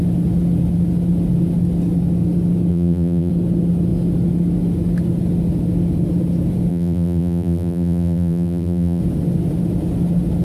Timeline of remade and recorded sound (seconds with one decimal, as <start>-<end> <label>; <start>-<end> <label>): 0.0-2.7 recorded; 2.7-3.3 remade; 3.3-6.7 recorded; 6.7-9.0 remade; 9.0-10.4 recorded